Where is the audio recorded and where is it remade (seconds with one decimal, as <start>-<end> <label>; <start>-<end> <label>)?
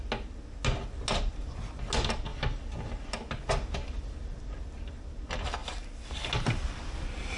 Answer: 0.0-7.4 recorded